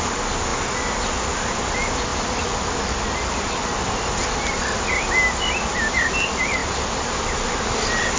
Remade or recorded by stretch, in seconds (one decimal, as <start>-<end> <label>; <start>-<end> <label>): 0.0-8.2 recorded